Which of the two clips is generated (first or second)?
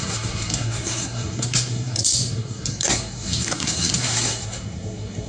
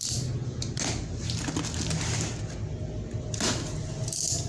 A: first